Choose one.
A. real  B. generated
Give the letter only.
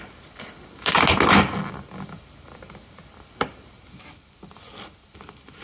A